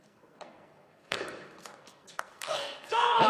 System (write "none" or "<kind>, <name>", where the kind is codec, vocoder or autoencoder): codec, SNAC